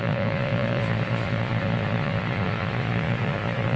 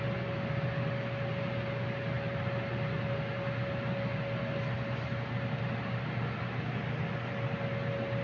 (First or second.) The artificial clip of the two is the first